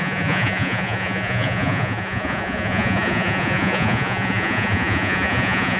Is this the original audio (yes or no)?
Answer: no